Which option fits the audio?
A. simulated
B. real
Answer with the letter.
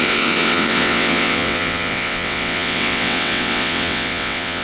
A